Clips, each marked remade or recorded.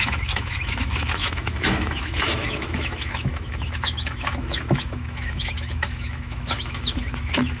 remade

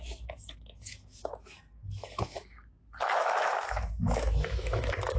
remade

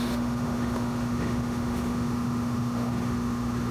remade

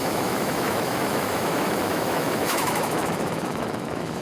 remade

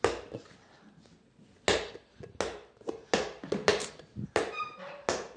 recorded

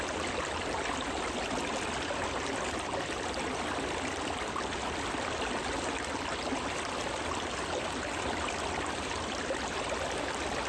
recorded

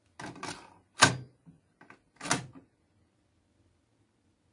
recorded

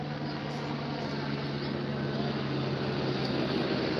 recorded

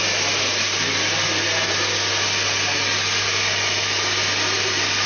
recorded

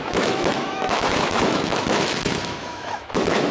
remade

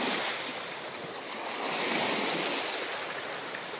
recorded